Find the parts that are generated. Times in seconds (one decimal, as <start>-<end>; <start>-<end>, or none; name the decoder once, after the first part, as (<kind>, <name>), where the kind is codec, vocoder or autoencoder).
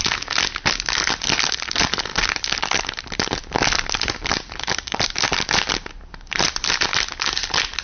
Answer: 2.1-5.9 (vocoder, BigVGAN v2)